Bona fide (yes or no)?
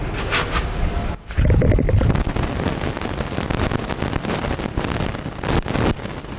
yes